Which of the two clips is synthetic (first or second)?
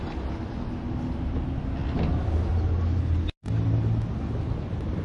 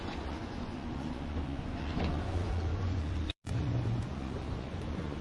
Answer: second